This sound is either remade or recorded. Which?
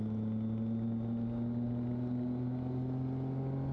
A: recorded